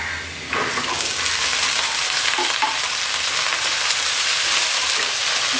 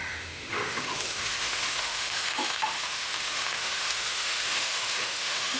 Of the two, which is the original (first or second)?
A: first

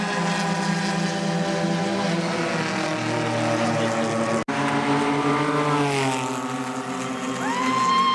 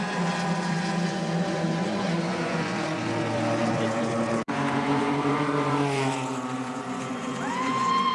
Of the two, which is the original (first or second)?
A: first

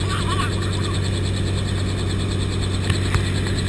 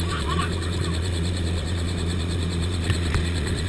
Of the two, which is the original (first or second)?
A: first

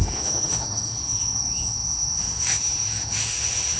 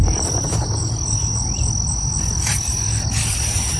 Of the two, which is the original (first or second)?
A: second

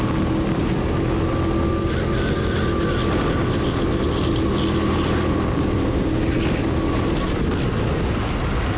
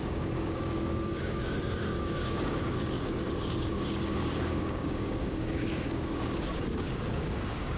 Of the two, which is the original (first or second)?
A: first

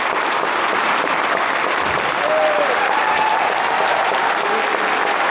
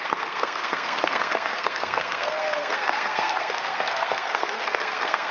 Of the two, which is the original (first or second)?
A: first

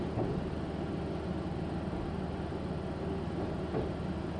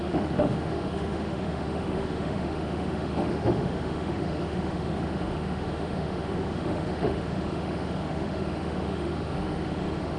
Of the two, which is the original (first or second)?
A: first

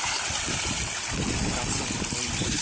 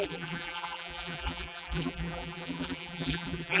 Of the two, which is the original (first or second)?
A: first